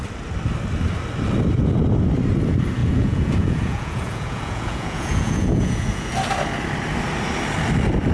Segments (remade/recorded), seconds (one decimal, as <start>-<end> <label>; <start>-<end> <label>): 0.0-2.8 recorded; 2.8-6.1 remade; 6.1-8.1 recorded